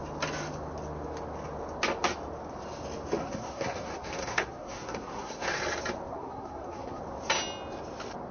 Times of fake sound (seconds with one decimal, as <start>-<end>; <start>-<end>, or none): 3.2-5.5; 6.1-7.0